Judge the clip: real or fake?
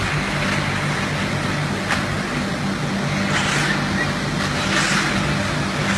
real